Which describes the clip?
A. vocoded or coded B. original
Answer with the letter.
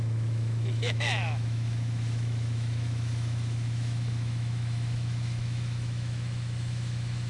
A